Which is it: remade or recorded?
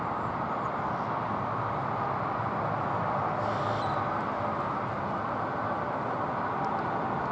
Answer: recorded